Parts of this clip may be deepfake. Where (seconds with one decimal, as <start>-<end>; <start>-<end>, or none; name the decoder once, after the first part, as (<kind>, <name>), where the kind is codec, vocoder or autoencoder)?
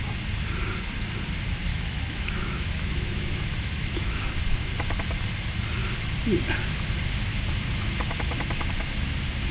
1.7-4.7 (autoencoder, DAC-VAE)